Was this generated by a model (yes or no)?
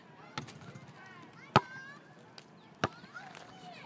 no